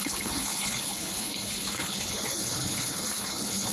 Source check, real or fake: fake